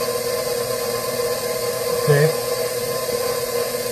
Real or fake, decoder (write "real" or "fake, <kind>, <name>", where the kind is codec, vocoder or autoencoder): real